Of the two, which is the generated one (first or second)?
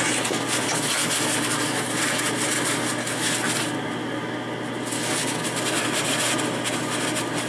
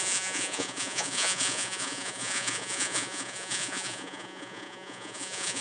second